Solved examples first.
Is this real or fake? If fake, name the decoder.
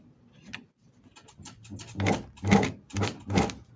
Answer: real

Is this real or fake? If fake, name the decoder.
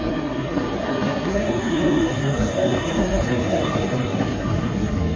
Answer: fake, codec, SNAC